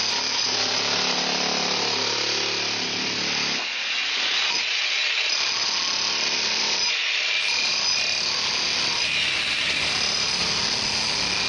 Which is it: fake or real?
real